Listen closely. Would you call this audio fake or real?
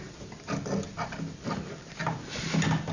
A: real